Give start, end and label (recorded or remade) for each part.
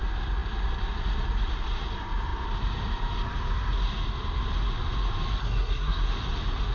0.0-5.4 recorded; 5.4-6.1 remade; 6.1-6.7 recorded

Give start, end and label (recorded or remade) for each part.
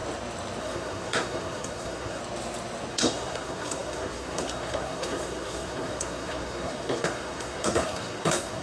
0.0-0.6 recorded; 0.6-2.2 remade; 2.2-2.9 recorded; 2.9-8.6 remade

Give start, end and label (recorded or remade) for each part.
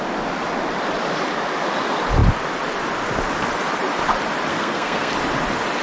0.0-4.5 recorded; 4.5-5.1 remade; 5.1-5.8 recorded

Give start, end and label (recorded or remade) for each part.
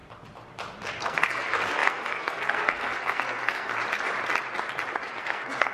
0.0-1.0 recorded; 1.0-3.7 remade; 3.7-5.1 recorded; 5.1-5.7 remade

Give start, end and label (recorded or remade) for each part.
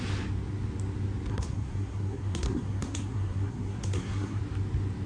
0.0-1.3 recorded; 1.3-4.4 remade; 4.4-5.1 recorded